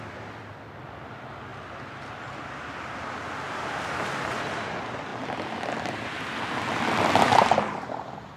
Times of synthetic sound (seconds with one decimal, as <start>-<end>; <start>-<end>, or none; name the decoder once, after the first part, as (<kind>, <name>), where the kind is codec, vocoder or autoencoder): none